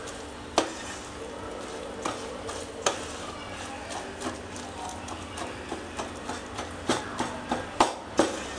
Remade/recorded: recorded